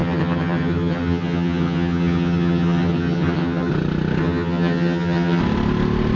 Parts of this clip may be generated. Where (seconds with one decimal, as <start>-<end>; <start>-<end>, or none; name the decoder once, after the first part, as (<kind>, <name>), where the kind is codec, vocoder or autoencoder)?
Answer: 0.0-3.7 (vocoder, HiFi-GAN); 4.2-5.4